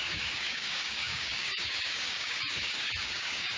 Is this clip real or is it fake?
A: fake